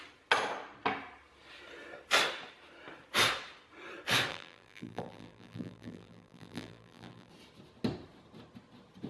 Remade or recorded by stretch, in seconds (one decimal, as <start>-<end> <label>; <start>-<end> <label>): 0.0-4.3 recorded; 4.3-7.3 remade; 7.3-9.1 recorded